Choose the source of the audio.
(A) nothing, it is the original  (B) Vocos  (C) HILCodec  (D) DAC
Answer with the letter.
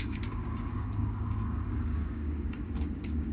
D